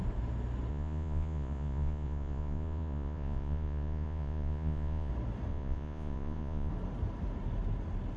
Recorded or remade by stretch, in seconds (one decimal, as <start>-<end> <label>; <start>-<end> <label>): 0.0-0.7 recorded; 0.7-5.1 remade; 5.1-5.5 recorded; 5.5-6.7 remade; 6.7-8.2 recorded